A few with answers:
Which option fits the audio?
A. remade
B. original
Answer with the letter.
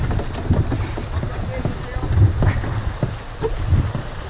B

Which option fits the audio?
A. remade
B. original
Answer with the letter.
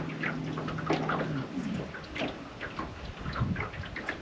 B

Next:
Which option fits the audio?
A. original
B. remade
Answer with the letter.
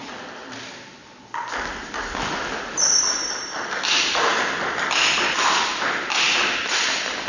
A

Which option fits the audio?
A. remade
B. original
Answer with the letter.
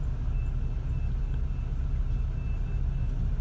B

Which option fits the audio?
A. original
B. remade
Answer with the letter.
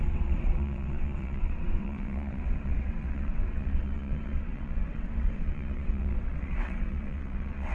B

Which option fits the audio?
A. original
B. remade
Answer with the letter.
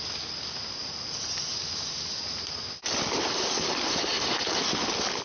A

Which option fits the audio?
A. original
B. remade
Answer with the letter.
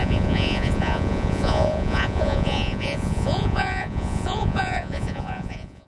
B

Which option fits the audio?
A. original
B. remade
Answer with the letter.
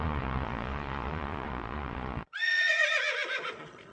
B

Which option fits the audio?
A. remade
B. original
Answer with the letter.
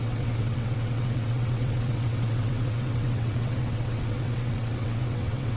A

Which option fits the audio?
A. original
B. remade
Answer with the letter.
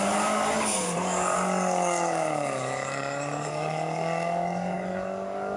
B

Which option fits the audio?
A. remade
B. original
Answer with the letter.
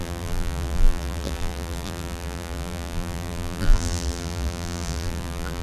A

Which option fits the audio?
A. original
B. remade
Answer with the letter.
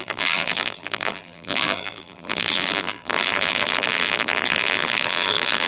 B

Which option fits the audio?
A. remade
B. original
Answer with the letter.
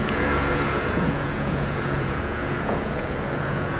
A